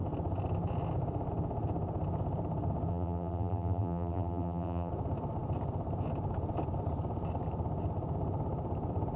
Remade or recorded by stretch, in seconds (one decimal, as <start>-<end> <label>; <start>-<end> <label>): 0.0-2.9 recorded; 2.9-4.9 remade; 4.9-9.2 recorded